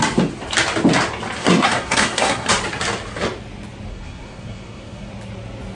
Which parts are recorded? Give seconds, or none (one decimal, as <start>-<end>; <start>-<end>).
0.0-1.4; 2.5-3.9; 5.1-5.7